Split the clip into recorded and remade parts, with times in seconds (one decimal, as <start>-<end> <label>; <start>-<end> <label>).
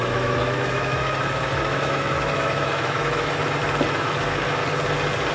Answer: 0.0-3.4 remade; 3.4-3.9 recorded; 3.9-4.6 remade; 4.6-5.3 recorded